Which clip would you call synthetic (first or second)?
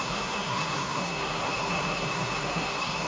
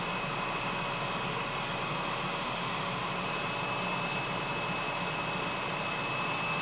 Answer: first